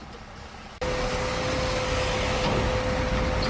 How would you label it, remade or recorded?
recorded